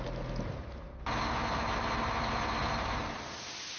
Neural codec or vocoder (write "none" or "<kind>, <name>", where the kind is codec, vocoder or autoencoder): none